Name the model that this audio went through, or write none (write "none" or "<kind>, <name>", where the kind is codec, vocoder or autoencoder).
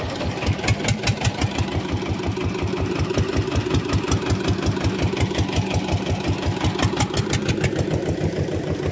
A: none